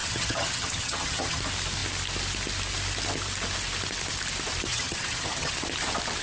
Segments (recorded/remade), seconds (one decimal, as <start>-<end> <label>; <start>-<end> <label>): 0.0-1.4 remade; 1.4-4.7 recorded; 4.7-5.5 remade; 5.5-6.2 recorded

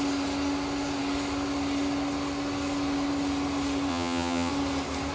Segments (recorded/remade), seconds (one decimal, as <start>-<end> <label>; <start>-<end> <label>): 0.0-3.9 recorded; 3.9-4.5 remade; 4.5-5.1 recorded

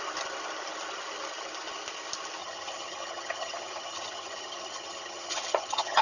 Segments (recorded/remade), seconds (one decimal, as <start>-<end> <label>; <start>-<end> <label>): 0.0-2.4 recorded; 2.4-6.0 remade

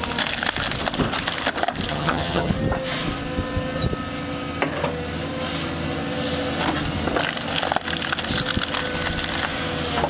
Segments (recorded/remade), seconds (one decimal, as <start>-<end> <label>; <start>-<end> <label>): 0.0-1.9 recorded; 1.9-2.5 remade; 2.5-10.1 recorded